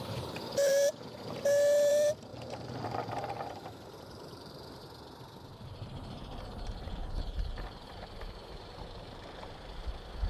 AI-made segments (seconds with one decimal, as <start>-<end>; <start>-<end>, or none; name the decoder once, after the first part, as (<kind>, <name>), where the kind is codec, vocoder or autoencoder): 2.3-4.8 (vocoder, BigVGAN v2); 7.0-9.9